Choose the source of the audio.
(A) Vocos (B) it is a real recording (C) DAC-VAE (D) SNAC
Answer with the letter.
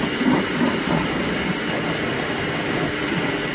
B